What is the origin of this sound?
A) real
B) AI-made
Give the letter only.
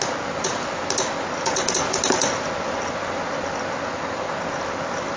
A